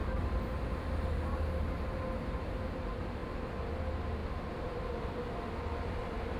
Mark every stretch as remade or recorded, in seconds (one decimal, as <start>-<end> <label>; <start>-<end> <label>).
0.0-6.4 recorded